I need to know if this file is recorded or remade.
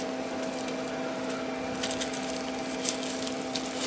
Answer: recorded